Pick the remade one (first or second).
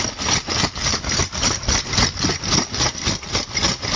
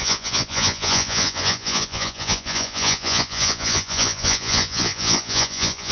second